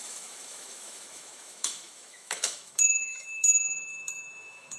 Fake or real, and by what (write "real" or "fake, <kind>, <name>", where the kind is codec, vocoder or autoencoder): fake, autoencoder, DAC-VAE